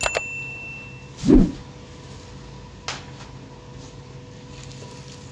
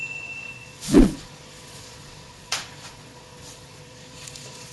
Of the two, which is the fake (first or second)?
second